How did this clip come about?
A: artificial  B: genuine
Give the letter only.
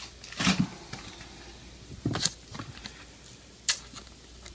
B